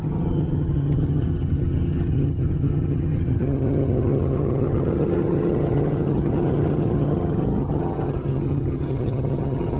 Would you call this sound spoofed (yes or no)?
yes